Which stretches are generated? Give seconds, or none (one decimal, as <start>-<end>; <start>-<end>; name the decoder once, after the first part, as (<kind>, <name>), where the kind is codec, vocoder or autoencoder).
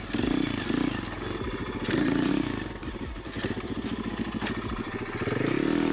1.6-2.3 (vocoder, BigVGAN v2); 2.8-4.1